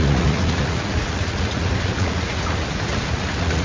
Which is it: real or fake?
fake